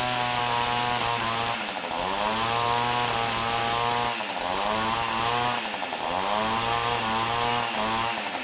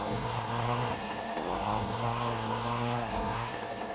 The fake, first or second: second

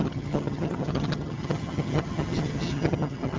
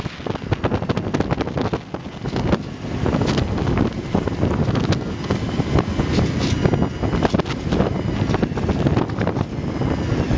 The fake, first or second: first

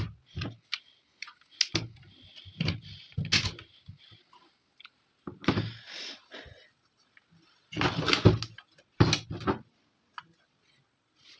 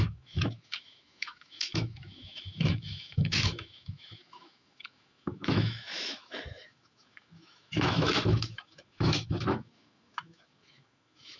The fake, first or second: second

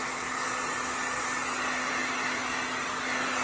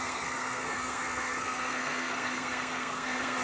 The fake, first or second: second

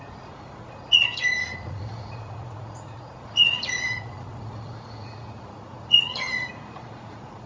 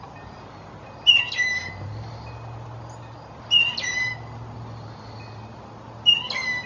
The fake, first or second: first